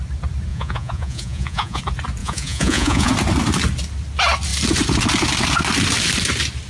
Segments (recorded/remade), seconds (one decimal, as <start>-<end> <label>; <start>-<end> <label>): 0.0-0.5 recorded; 0.5-1.8 remade; 1.8-2.2 recorded; 2.2-3.1 remade; 3.1-6.7 recorded